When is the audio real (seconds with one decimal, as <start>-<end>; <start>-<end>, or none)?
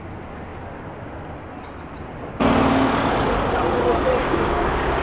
0.0-4.2